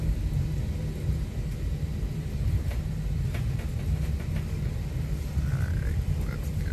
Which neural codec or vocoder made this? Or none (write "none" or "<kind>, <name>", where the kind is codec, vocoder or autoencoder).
none